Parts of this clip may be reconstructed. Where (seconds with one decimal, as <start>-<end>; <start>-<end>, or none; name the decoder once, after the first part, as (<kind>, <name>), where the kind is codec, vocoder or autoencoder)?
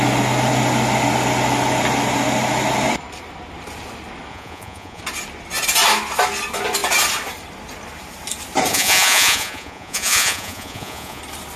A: 4.3-5.0 (vocoder, Vocos); 8.7-11.2